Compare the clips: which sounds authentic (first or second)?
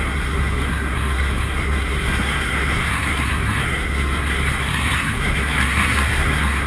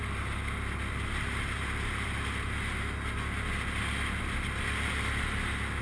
second